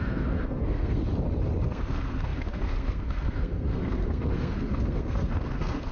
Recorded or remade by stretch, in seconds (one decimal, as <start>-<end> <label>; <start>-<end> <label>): 0.0-1.0 remade; 1.0-1.6 recorded; 1.6-5.9 remade